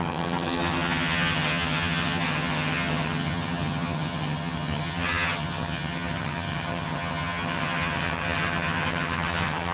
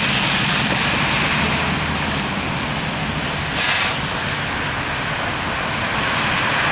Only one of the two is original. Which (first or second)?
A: second